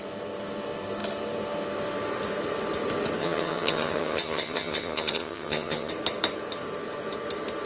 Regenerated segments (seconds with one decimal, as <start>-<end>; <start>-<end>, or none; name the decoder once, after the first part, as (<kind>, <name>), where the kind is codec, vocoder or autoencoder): 3.2-5.9 (vocoder, HiFi-GAN)

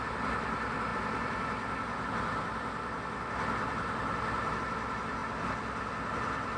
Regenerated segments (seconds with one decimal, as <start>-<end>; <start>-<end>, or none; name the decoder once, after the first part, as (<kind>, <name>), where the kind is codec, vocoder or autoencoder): none

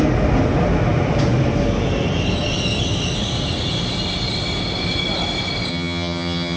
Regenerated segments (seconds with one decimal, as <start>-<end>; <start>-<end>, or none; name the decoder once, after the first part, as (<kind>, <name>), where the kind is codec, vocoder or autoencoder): 5.7-6.6 (vocoder, HiFi-GAN)

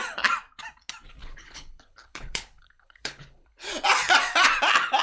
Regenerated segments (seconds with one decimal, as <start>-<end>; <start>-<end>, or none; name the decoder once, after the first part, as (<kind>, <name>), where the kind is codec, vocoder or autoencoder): 1.2-3.7 (codec, HILCodec)

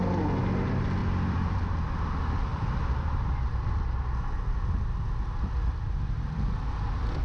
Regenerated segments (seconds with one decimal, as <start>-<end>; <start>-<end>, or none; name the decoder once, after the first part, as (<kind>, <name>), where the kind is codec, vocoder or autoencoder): 1.0-1.7 (vocoder, BigVGAN v2); 2.5-3.5